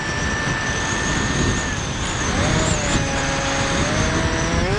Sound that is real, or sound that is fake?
real